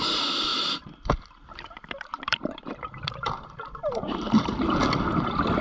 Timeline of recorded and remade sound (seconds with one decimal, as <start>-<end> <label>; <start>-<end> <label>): 0.0-0.5 recorded; 0.5-1.2 remade; 1.2-2.1 recorded; 2.1-4.8 remade; 4.8-5.6 recorded